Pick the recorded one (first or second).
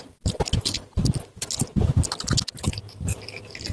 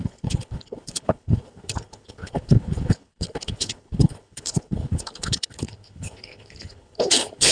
first